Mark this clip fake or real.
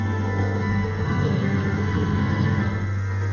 fake